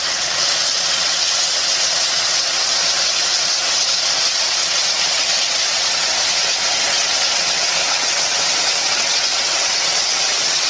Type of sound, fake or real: fake